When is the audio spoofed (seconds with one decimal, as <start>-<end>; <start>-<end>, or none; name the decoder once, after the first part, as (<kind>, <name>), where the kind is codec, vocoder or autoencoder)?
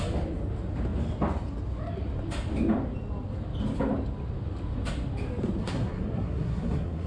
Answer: 5.6-7.1 (codec, SNAC)